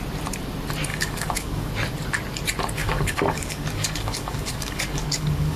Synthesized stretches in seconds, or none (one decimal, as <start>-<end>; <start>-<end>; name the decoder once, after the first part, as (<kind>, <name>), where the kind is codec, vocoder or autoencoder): 0.9-1.7 (codec, DAC); 2.8-5.6